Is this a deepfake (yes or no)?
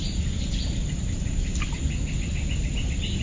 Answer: no